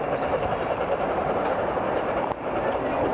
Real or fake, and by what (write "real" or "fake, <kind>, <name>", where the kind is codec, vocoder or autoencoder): fake, vocoder, BigVGAN v2